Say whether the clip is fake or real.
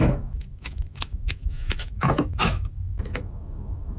fake